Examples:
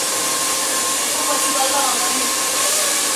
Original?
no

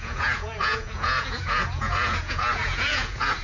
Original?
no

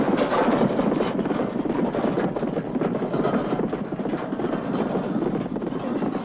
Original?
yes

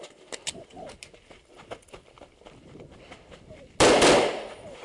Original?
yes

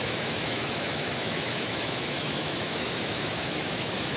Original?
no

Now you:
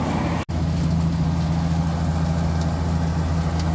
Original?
yes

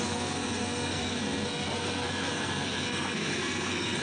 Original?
no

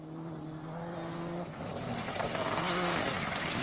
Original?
yes